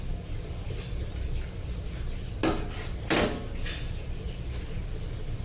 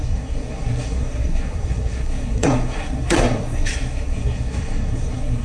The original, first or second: first